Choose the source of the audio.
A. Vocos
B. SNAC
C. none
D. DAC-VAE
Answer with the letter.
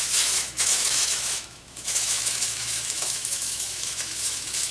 D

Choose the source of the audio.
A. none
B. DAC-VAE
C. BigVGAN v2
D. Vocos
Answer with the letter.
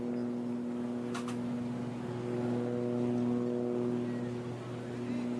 A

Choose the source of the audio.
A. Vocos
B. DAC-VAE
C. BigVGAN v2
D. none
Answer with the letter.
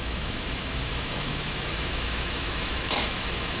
B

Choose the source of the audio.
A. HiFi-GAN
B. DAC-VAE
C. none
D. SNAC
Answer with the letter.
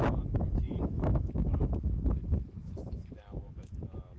B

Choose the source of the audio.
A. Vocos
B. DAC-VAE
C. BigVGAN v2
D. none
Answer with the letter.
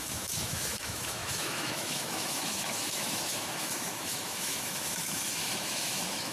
B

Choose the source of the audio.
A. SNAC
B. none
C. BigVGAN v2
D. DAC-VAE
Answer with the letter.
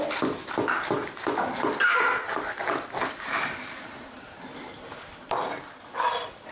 B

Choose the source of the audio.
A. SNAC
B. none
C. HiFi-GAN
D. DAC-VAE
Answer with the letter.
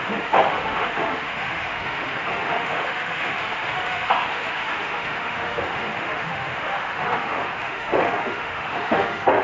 D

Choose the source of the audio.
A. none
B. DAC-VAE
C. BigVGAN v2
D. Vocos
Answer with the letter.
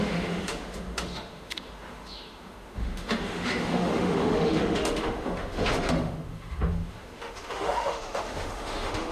B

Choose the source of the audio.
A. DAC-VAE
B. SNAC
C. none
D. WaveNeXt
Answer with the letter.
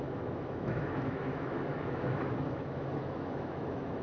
A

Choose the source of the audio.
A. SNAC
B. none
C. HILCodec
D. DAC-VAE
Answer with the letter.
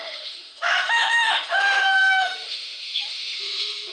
D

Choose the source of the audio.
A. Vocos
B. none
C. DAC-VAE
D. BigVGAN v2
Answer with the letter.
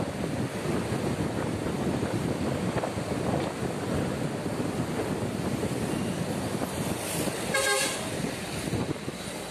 B